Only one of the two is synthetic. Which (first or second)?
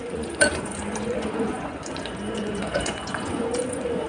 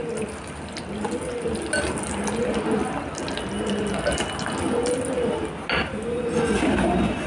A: first